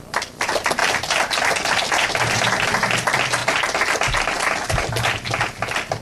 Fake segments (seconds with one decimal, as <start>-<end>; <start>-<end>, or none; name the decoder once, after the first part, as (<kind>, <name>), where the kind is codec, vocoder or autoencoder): none